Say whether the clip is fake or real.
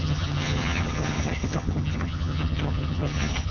fake